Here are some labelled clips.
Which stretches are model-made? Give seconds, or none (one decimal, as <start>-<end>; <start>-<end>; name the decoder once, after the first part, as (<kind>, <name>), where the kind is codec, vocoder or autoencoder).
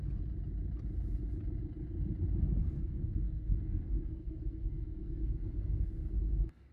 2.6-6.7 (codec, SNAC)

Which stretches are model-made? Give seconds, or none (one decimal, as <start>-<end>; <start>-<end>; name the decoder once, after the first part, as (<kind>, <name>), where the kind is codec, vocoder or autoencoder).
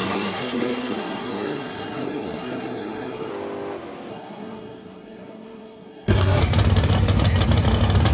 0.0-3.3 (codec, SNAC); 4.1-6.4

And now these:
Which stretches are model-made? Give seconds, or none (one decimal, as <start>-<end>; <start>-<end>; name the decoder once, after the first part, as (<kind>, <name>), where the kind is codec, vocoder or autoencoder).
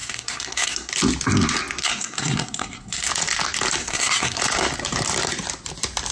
0.0-0.9 (codec, SNAC); 1.8-3.1; 3.8-4.4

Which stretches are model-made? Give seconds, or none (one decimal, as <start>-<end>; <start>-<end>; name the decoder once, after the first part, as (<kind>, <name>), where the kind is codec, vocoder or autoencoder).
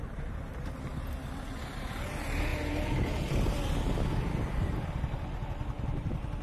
none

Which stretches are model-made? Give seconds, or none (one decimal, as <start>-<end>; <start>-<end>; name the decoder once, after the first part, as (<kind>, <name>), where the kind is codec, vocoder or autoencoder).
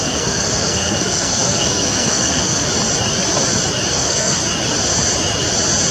0.0-2.7 (codec, SNAC); 3.9-4.4